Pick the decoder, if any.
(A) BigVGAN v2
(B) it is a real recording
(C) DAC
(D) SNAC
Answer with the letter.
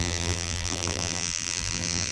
A